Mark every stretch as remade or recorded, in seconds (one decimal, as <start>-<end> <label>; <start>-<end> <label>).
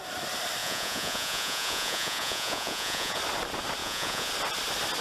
0.0-0.6 recorded; 0.6-3.2 remade; 3.2-3.8 recorded; 3.8-4.3 remade; 4.3-5.0 recorded